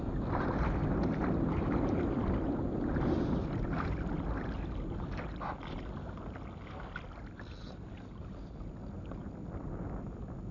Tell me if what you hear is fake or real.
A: real